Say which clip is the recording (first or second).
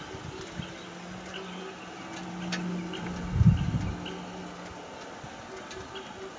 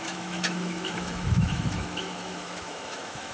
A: first